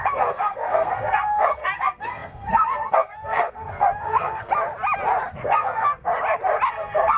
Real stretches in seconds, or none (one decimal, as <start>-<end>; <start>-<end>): 4.5-5.4; 6.1-6.7